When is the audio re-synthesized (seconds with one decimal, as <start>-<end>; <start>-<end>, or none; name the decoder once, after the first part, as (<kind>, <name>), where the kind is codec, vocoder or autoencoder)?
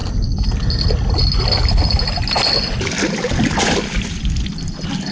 none